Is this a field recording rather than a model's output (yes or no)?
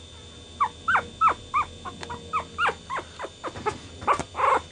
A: yes